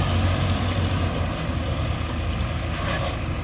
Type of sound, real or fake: real